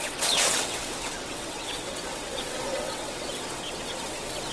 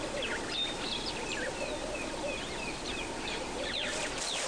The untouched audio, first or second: second